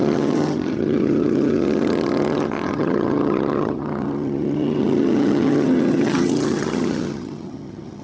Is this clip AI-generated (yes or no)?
yes